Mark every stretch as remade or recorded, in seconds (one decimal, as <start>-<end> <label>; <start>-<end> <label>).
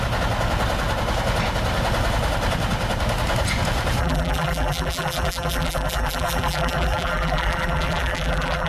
0.0-4.0 recorded; 4.0-8.7 remade